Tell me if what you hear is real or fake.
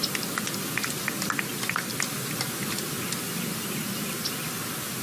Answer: real